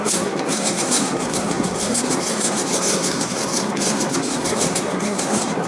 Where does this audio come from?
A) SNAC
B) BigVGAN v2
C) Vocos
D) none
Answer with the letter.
A